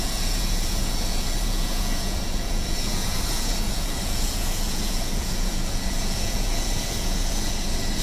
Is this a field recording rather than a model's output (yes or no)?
no